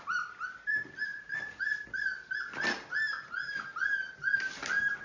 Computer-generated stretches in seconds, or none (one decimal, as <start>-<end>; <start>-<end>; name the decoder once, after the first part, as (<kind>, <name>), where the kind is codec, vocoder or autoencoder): none